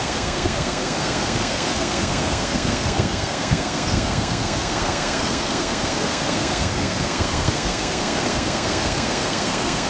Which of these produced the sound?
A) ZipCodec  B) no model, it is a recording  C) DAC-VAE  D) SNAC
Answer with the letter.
D